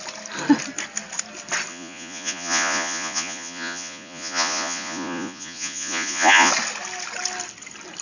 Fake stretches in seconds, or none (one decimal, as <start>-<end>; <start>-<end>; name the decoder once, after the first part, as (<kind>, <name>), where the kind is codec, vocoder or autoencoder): 1.7-6.5 (vocoder, Vocos)